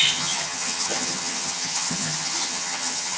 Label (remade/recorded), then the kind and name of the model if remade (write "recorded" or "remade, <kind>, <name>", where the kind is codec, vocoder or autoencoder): remade, vocoder, HiFi-GAN